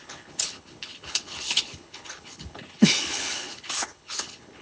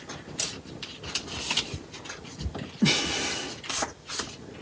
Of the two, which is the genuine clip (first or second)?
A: second